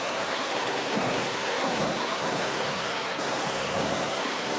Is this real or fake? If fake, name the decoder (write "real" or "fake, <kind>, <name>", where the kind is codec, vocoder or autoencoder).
fake, codec, SNAC